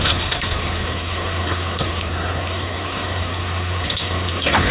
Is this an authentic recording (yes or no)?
no